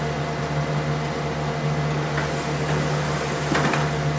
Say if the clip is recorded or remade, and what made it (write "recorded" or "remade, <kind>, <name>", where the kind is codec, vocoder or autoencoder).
recorded